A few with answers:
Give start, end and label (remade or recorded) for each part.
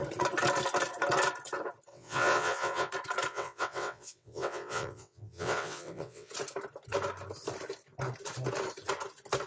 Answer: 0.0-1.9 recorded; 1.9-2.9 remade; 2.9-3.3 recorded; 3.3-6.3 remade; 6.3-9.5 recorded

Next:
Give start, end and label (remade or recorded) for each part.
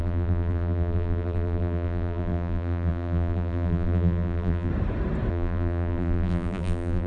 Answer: 0.0-4.7 remade; 4.7-5.3 recorded; 5.3-7.1 remade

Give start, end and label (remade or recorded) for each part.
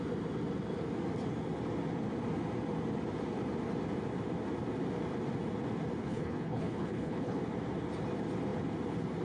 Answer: 0.0-6.0 recorded; 6.0-7.4 remade; 7.4-9.2 recorded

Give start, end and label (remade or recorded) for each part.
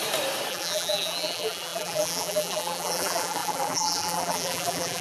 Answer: 0.0-0.5 recorded; 0.5-5.0 remade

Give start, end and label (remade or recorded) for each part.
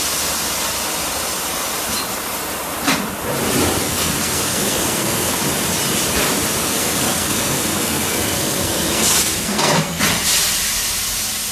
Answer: 0.0-3.8 recorded; 3.8-5.4 remade; 5.4-6.6 recorded; 6.6-10.0 remade; 10.0-11.5 recorded